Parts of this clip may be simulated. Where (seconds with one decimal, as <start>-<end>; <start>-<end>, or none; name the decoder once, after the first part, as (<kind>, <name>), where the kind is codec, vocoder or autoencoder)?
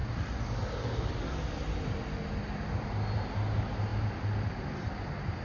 none